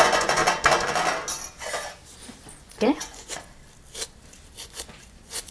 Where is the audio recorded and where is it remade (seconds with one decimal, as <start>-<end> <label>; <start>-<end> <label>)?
0.0-0.4 remade; 0.4-2.6 recorded; 2.6-3.5 remade; 3.5-4.6 recorded; 4.6-5.5 remade